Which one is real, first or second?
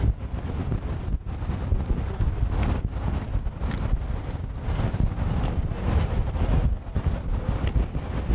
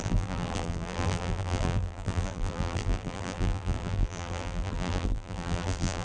first